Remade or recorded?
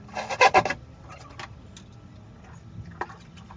recorded